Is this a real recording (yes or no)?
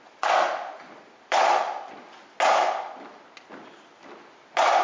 yes